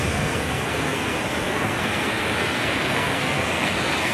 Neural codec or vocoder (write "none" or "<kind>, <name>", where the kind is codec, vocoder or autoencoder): codec, SNAC